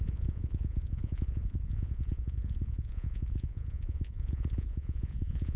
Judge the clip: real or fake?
fake